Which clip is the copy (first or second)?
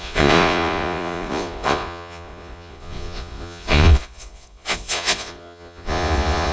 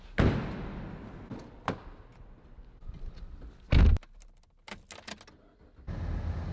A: first